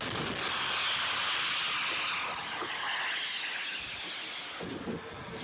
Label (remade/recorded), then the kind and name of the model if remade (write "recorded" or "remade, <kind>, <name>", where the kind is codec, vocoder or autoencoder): recorded